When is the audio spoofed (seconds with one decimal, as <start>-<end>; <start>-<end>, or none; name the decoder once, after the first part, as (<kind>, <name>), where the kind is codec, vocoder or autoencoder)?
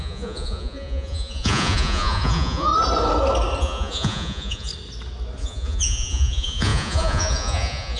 0.0-2.7 (vocoder, Vocos); 3.6-4.7; 5.4-8.0